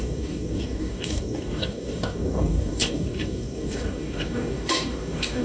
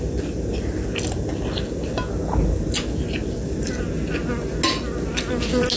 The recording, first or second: second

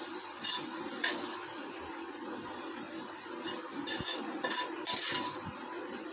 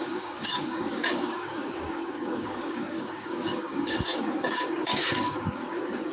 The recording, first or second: first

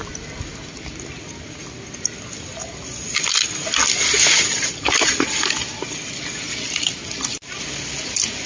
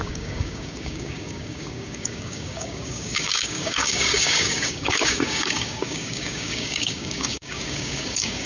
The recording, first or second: first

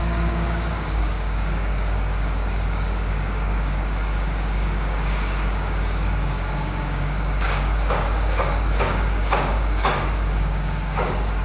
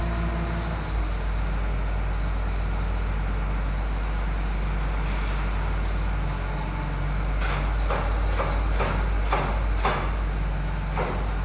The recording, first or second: second